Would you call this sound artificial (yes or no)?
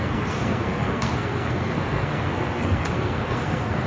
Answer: yes